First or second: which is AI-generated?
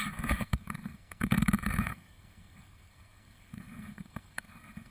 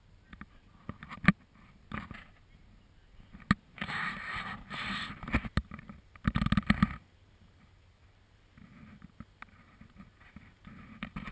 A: first